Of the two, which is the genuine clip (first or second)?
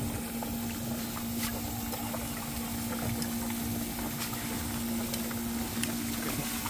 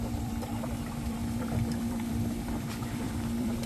first